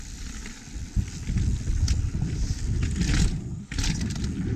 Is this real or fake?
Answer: real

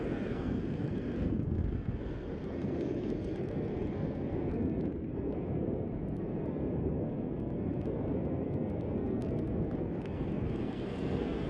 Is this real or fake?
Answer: fake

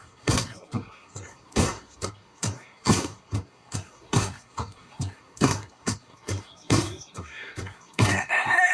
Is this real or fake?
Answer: fake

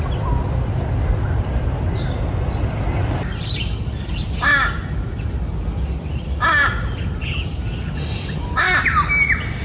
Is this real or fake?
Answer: real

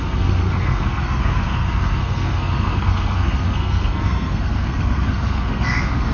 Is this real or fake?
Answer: fake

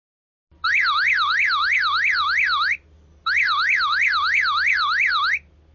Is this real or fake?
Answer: real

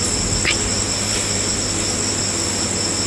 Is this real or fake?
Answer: real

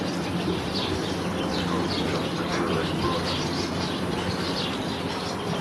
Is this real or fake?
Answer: real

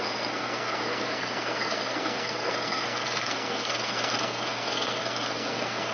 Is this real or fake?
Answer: fake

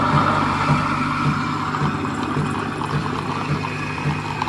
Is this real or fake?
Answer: real